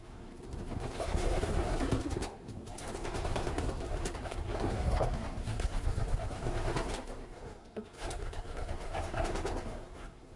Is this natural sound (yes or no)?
no